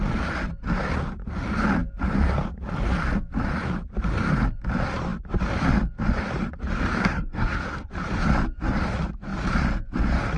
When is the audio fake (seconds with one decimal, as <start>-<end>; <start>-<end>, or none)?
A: 7.0-7.9